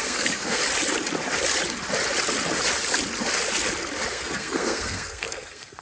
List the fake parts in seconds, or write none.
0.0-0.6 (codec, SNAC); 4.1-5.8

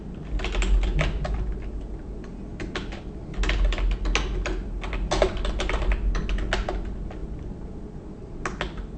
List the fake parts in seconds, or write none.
none

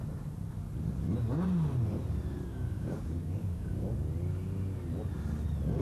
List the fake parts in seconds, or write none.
2.5-3.9 (codec, DAC)

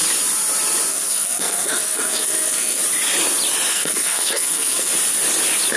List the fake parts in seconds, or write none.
0.9-2.8 (codec, SNAC); 3.7-4.9

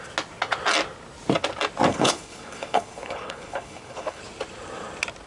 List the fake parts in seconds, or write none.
1.9-4.2 (codec, HILCodec)